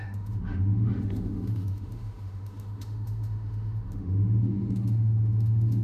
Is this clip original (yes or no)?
no